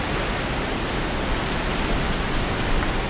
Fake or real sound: real